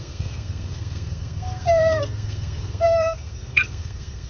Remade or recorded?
remade